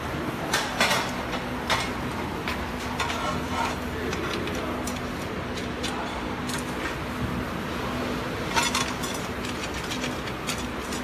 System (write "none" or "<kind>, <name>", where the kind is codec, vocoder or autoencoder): none